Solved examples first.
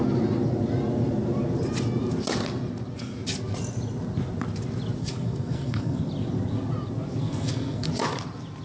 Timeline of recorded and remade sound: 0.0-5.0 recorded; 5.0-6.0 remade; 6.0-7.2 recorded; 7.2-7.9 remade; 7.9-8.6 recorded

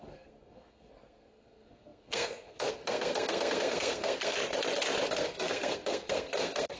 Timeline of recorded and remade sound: 0.0-4.4 remade; 4.4-5.1 recorded; 5.1-6.8 remade